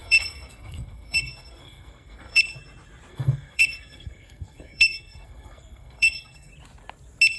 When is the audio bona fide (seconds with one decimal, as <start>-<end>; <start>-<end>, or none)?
2.4-3.1; 6.5-7.4